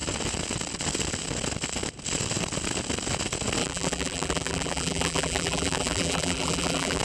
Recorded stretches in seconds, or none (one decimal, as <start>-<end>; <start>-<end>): 0.0-3.6